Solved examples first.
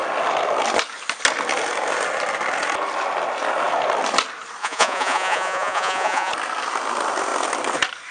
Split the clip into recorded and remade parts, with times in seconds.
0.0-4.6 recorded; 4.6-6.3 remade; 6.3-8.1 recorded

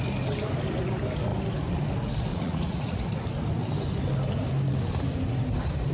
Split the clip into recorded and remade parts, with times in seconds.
0.0-2.3 recorded; 2.3-3.0 remade; 3.0-5.9 recorded

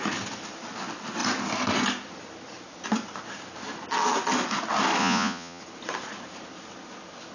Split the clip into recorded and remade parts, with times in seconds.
0.0-5.0 recorded; 5.0-5.6 remade; 5.6-7.3 recorded

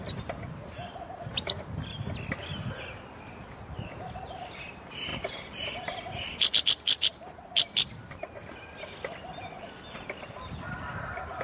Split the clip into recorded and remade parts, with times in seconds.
0.0-11.4 recorded

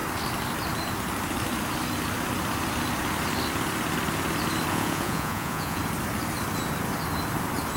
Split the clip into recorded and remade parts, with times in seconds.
0.0-4.7 recorded; 4.7-5.8 remade; 5.8-7.8 recorded